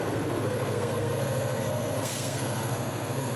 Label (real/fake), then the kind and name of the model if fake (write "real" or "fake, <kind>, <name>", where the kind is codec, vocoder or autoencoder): fake, codec, SNAC